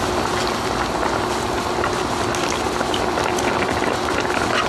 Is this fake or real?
real